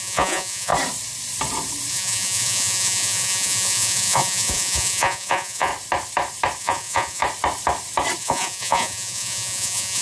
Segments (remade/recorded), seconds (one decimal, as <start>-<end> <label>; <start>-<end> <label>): 0.0-0.7 remade; 0.7-1.9 recorded; 1.9-5.7 remade; 5.7-6.6 recorded; 6.6-7.2 remade; 7.2-8.2 recorded; 8.2-10.0 remade